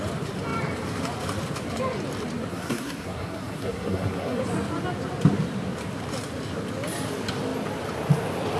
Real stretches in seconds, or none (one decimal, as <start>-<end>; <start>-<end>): 0.0-2.5; 4.4-8.6